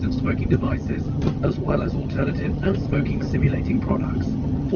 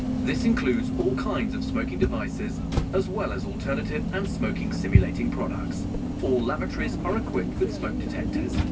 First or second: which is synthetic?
first